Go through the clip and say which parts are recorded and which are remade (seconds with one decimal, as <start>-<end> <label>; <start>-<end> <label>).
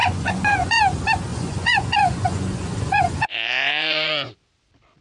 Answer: 0.0-0.8 remade; 0.8-1.3 recorded; 1.3-4.3 remade; 4.3-5.0 recorded